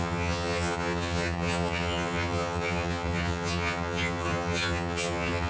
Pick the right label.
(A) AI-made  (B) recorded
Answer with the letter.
A